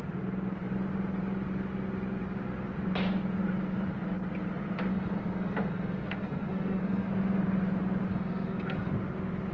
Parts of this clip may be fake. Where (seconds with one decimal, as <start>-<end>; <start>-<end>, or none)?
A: 4.9-7.1; 8.1-8.9